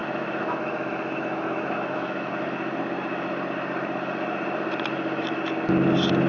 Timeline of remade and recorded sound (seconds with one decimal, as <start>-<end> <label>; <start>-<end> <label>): 0.0-2.3 remade; 2.3-6.3 recorded